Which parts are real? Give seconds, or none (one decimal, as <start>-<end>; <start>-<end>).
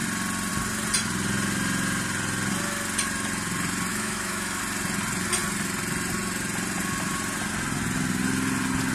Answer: 0.0-3.9; 4.6-8.9